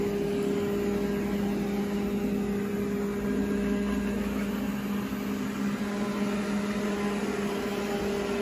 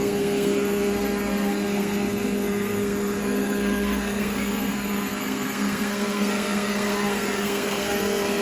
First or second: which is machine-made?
second